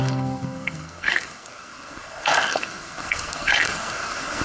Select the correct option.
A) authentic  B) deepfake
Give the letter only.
B